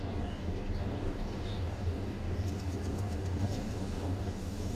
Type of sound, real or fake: fake